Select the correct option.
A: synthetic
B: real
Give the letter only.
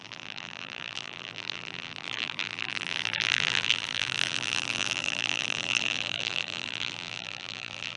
A